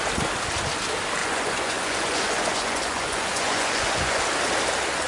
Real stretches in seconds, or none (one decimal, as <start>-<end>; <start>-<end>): 0.0-1.2; 4.2-5.1